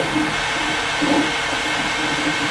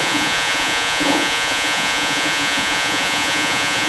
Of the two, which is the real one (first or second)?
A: first